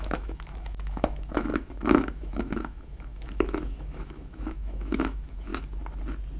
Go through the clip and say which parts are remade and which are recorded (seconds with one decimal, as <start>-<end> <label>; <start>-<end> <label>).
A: 0.0-5.5 remade; 5.5-6.4 recorded